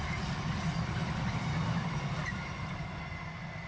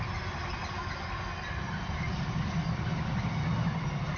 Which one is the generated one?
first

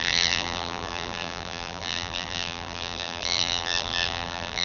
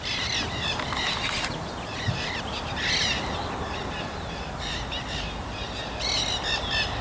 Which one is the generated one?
first